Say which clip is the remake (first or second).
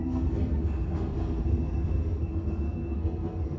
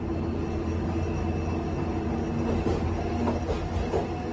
first